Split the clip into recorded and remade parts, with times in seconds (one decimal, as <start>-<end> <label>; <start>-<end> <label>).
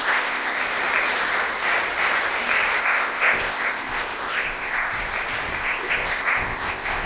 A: 0.0-0.6 remade; 0.6-2.8 recorded; 2.8-4.9 remade; 4.9-5.6 recorded; 5.6-7.1 remade